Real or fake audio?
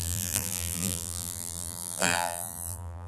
fake